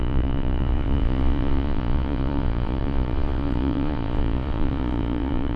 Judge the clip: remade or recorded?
remade